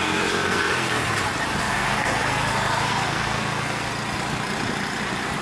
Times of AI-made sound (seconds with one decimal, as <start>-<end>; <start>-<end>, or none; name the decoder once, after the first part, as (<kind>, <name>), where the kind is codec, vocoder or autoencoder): 0.0-1.0 (codec, SNAC); 1.6-3.9